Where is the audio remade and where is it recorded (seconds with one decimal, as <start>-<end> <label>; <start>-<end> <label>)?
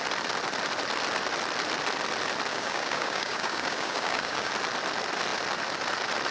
0.0-2.5 recorded; 2.5-4.5 remade; 4.5-6.3 recorded